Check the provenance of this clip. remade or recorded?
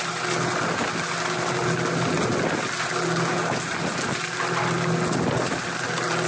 recorded